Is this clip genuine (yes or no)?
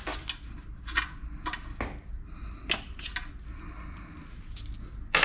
yes